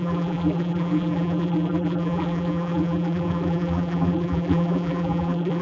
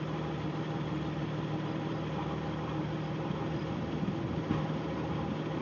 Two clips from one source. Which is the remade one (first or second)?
first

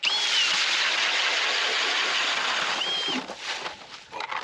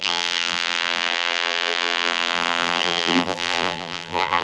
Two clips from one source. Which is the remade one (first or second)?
second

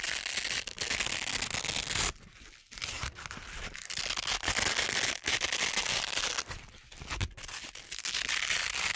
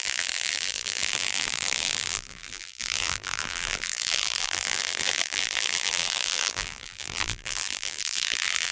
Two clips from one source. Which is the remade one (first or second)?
second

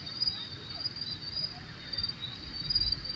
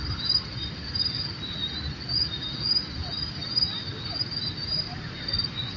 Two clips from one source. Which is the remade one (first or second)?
first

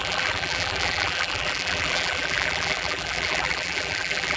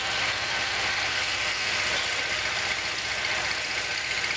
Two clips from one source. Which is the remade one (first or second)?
first